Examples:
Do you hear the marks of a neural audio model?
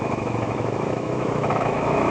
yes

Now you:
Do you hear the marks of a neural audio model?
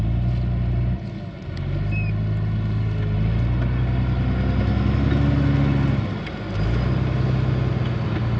no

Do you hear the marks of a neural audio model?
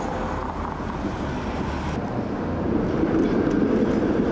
no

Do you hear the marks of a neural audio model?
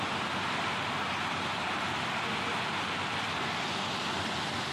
no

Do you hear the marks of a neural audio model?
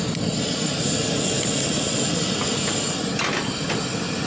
no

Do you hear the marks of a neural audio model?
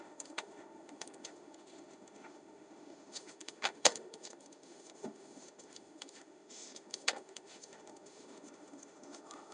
yes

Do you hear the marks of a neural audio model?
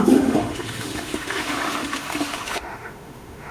yes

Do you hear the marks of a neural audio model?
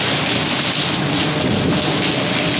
no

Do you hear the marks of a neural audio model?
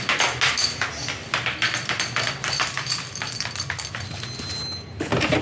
no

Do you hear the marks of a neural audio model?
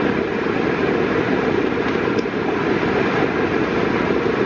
no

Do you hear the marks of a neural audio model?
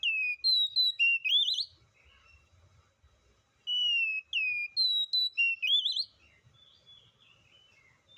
no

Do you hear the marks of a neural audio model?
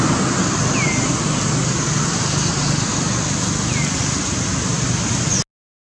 no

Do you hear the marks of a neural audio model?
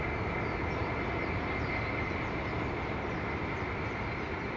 no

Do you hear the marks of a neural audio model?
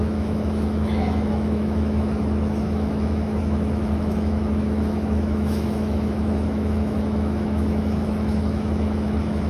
yes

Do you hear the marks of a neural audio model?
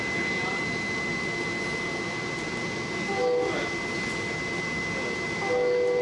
no